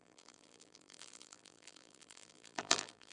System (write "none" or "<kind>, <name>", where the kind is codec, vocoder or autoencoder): vocoder, BigVGAN v2